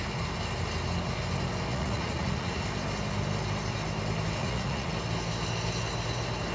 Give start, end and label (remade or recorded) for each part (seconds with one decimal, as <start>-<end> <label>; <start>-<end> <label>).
0.0-1.7 recorded; 1.7-2.6 remade; 2.6-4.4 recorded; 4.4-4.9 remade; 4.9-6.5 recorded